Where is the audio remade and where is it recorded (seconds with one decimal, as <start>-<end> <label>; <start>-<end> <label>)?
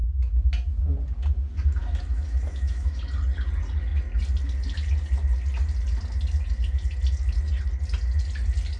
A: 0.0-1.8 recorded; 1.8-3.0 remade; 3.0-8.8 recorded